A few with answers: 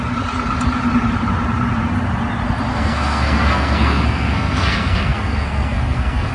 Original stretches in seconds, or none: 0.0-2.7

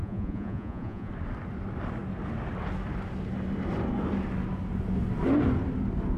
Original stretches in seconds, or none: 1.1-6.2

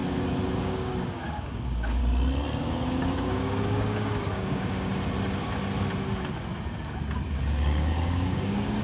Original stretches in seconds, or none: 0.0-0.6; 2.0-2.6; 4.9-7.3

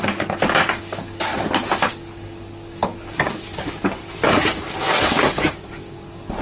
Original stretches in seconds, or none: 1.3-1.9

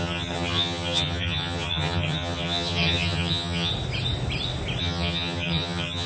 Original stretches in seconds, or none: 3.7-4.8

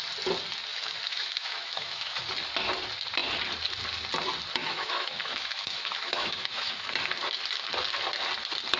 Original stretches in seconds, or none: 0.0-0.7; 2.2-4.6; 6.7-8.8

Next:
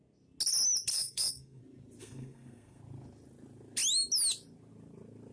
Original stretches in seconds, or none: 0.0-0.9; 1.6-2.0; 2.8-5.3

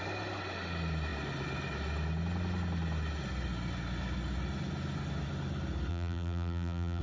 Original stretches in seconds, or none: 0.0-5.9